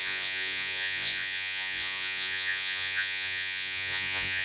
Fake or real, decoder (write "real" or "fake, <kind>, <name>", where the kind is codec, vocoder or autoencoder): fake, vocoder, Vocos